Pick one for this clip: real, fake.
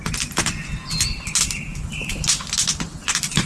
real